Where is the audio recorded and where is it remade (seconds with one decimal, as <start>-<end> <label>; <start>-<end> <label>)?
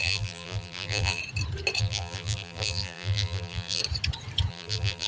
0.0-1.2 remade; 1.2-1.8 recorded; 1.8-3.8 remade; 3.8-4.5 recorded; 4.5-5.1 remade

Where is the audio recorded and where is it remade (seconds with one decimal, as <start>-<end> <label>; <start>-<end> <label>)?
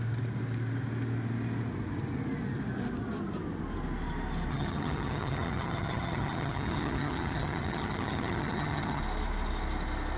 0.0-4.5 recorded; 4.5-9.0 remade; 9.0-10.2 recorded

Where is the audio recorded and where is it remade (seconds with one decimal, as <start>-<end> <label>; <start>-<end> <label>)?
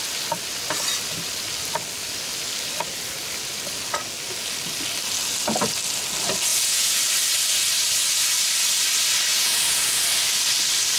0.0-6.5 recorded; 6.5-7.0 remade; 7.0-9.3 recorded; 9.3-10.0 remade; 10.0-11.0 recorded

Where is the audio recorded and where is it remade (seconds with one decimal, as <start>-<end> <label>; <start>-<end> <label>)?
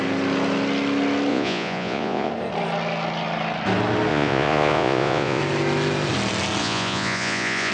0.0-1.3 recorded; 1.3-2.3 remade; 2.3-4.1 recorded; 4.1-5.4 remade; 5.4-6.6 recorded; 6.6-7.7 remade